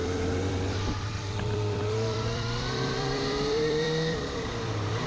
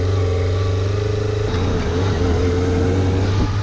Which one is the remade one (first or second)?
first